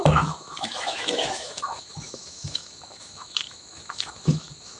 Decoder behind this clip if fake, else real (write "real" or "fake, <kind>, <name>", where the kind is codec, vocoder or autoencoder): fake, autoencoder, DAC-VAE